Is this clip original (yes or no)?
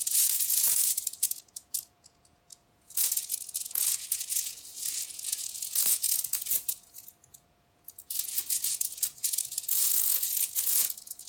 no